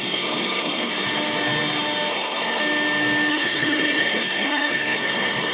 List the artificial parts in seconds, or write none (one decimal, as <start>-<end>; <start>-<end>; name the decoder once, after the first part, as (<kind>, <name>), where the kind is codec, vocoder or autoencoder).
0.0-0.9 (codec, SNAC); 2.1-2.6; 3.3-5.5